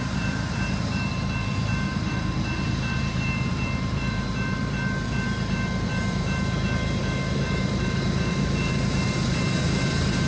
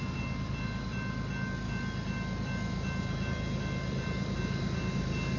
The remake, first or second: first